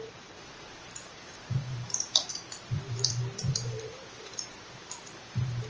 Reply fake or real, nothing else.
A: fake